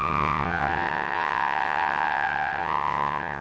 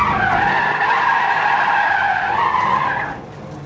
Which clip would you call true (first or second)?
second